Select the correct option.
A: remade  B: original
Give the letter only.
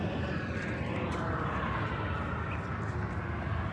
B